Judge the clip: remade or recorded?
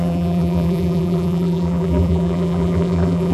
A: remade